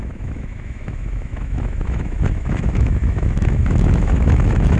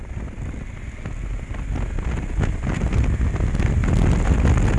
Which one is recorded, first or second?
second